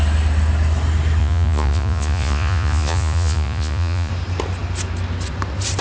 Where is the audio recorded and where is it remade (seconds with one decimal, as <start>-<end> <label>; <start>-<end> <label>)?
0.0-1.2 recorded; 1.2-4.1 remade; 4.1-5.8 recorded